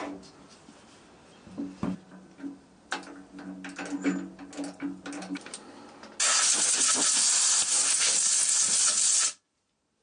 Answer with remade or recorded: recorded